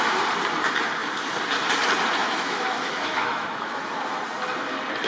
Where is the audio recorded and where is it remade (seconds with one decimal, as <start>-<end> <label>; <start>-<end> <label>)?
0.0-2.2 recorded; 2.2-3.7 remade; 3.7-5.1 recorded